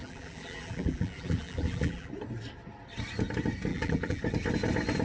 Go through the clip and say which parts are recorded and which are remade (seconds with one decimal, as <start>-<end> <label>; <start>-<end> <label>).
0.0-2.1 remade; 2.1-3.7 recorded; 3.7-4.2 remade; 4.2-5.0 recorded